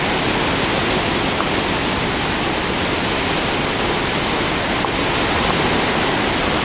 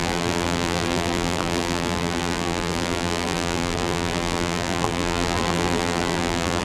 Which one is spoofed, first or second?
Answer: second